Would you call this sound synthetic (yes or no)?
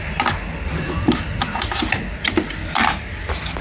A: no